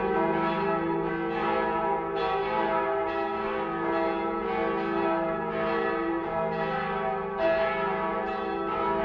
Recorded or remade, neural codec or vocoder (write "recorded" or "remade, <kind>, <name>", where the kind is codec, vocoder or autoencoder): recorded